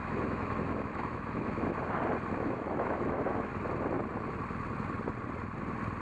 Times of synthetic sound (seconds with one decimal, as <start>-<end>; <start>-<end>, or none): 0.0-1.7; 2.3-3.5